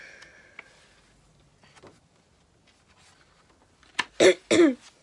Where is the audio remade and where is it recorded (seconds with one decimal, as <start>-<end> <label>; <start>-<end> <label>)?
0.0-5.0 recorded